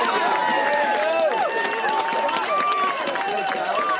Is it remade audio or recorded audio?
recorded